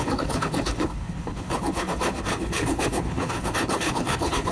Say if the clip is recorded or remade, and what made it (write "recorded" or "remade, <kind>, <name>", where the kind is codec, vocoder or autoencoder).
remade, codec, HILCodec